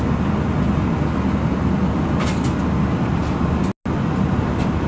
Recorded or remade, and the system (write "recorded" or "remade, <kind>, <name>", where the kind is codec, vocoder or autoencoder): recorded